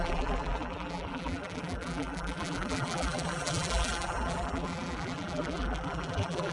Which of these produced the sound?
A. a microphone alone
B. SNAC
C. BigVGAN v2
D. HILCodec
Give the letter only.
C